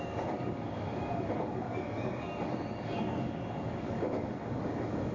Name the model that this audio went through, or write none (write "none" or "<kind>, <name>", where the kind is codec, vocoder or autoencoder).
codec, DAC